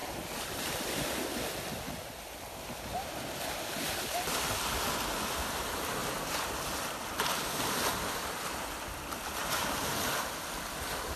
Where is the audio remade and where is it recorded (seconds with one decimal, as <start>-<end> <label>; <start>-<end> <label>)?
0.0-6.0 recorded; 6.0-6.8 remade; 6.8-9.4 recorded; 9.4-10.0 remade; 10.0-11.2 recorded